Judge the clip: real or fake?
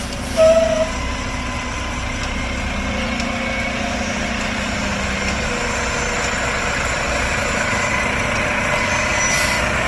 real